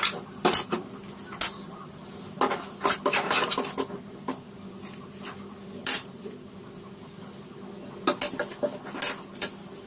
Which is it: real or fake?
real